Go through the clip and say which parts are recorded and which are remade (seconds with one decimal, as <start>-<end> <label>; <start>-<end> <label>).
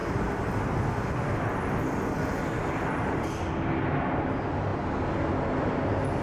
0.0-6.2 recorded